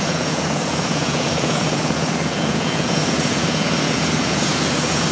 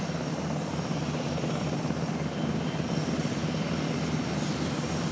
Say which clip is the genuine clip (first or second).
second